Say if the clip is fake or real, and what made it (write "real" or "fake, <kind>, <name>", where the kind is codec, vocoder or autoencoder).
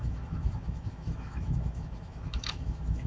fake, autoencoder, DAC-VAE